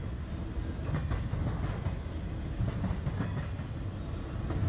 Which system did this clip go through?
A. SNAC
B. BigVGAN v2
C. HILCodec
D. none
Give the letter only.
D